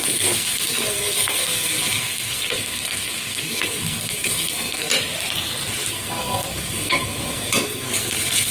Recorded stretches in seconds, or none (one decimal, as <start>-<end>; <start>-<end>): 4.9-5.9